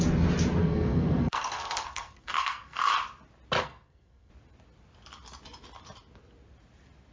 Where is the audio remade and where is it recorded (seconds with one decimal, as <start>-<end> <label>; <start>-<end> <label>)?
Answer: 0.0-0.6 recorded; 0.6-2.8 remade; 2.8-3.6 recorded; 3.6-4.3 remade; 4.3-7.1 recorded